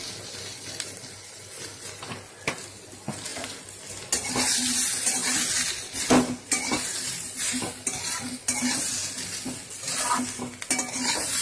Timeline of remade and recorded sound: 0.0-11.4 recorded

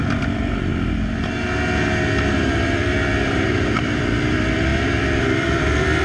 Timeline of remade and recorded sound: 0.0-0.7 remade; 0.7-2.5 recorded; 2.5-6.0 remade

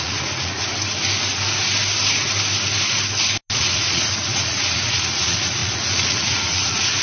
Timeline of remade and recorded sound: 0.0-0.7 remade; 0.7-3.6 recorded; 3.6-7.0 remade

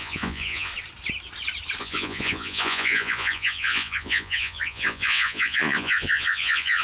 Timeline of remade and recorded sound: 0.0-0.7 remade; 0.7-1.8 recorded; 1.8-6.8 remade

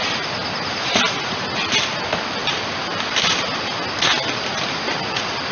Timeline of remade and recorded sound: 0.0-5.5 recorded

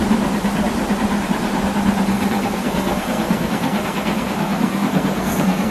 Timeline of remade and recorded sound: 0.0-2.1 recorded; 2.1-5.7 remade

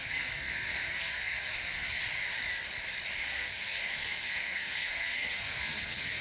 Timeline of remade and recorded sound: 0.0-2.0 remade; 2.0-3.3 recorded; 3.3-6.2 remade

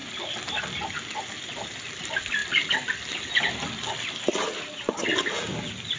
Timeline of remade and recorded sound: 0.0-2.4 recorded; 2.4-5.6 remade; 5.6-6.0 recorded